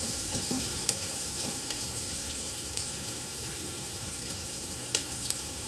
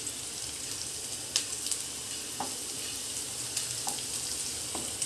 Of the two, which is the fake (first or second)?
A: first